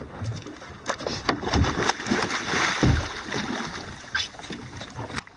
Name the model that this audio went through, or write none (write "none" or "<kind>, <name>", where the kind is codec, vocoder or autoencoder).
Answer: none